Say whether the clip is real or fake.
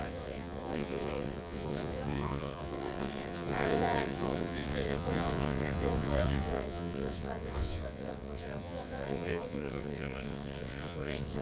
fake